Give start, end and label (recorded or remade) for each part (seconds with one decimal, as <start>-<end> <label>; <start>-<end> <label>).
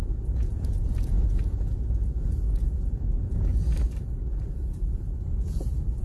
0.0-3.5 remade; 3.5-4.1 recorded; 4.1-6.0 remade